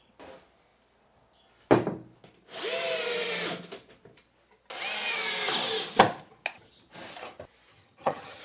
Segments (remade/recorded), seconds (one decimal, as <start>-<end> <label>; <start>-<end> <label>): 0.0-7.7 recorded; 7.7-8.4 remade